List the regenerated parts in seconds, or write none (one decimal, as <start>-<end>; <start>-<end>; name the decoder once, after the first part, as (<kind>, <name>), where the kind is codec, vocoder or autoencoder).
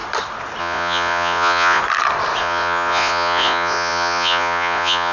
0.6-1.8 (vocoder, Vocos); 2.4-5.1